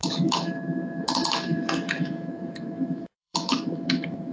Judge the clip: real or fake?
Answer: fake